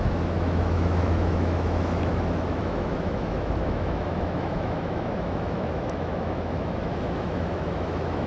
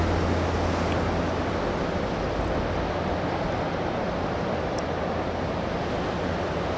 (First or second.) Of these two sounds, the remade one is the first